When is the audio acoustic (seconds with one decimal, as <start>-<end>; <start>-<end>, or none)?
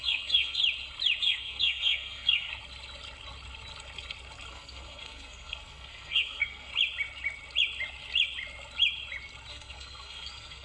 0.6-1.2; 2.5-4.5; 6.7-9.5